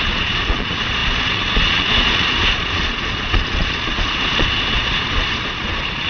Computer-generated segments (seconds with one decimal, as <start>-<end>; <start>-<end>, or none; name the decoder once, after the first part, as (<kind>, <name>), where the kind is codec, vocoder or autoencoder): 0.0-6.1 (vocoder, Vocos)